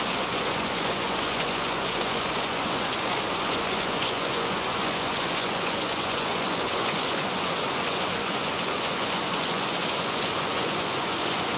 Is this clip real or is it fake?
fake